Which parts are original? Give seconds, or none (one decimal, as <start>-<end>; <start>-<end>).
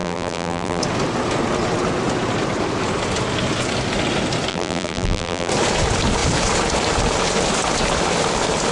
0.8-4.5; 5.5-8.7